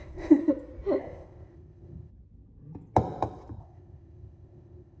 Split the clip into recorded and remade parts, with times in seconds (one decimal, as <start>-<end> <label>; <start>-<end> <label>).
0.0-0.4 remade; 0.4-1.0 recorded; 1.0-2.1 remade; 2.1-3.6 recorded; 3.6-5.0 remade

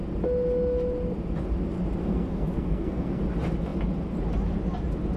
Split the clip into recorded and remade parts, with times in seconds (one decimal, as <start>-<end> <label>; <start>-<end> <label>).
0.0-2.0 recorded; 2.0-3.2 remade; 3.2-5.2 recorded

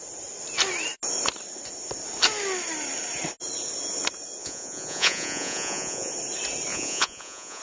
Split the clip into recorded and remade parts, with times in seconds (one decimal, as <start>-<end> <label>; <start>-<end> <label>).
0.0-4.4 recorded; 4.4-6.1 remade; 6.1-6.7 recorded; 6.7-7.6 remade